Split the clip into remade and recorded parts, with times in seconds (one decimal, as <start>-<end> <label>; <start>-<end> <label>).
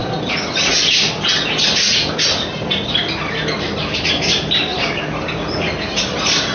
0.0-3.8 recorded; 3.8-6.5 remade